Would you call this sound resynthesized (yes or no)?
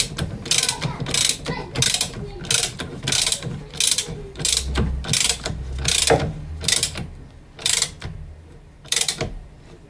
no